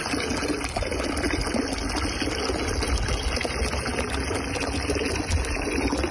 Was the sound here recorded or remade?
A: recorded